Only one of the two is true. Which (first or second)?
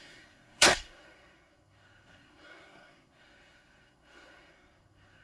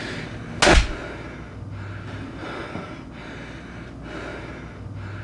second